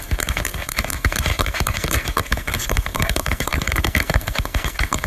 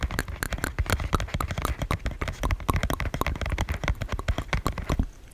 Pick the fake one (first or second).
first